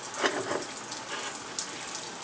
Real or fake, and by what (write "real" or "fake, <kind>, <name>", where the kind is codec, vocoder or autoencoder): real